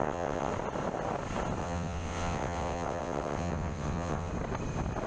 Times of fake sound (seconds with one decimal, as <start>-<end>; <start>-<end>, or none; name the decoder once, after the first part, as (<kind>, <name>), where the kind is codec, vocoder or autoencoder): 0.0-0.5 (vocoder, WaveNeXt); 1.6-4.3